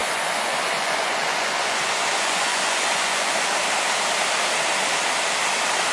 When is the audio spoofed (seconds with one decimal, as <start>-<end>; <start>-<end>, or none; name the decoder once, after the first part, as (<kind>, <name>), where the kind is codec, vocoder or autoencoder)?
0.0-3.5 (vocoder, Vocos)

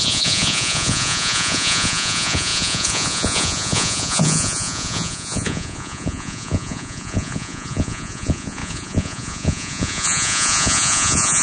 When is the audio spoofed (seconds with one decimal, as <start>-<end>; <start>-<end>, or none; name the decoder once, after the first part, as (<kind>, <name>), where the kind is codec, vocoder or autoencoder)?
0.0-11.4 (vocoder, Vocos)

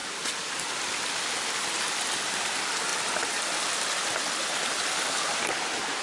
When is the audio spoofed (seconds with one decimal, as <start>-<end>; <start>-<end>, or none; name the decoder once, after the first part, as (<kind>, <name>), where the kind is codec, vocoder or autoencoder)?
none

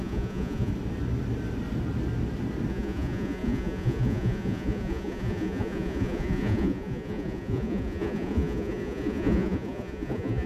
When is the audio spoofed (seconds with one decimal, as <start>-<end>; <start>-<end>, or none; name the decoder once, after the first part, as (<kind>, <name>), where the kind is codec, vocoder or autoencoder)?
0.0-0.7 (vocoder, Vocos); 2.7-10.5

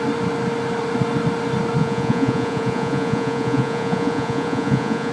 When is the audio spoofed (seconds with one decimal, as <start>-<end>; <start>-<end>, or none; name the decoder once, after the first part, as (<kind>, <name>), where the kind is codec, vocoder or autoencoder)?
1.8-5.1 (vocoder, Vocos)

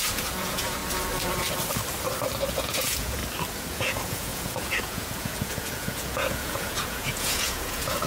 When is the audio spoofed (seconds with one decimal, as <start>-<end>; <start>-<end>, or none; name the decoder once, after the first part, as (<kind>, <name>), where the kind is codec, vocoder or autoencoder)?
0.0-0.8 (vocoder, Vocos); 2.5-3.2; 3.7-8.1

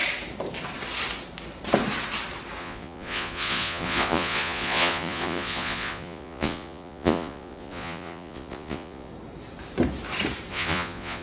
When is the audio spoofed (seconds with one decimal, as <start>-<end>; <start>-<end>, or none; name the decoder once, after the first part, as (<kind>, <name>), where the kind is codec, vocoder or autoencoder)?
2.6-9.1 (vocoder, Vocos); 10.5-11.2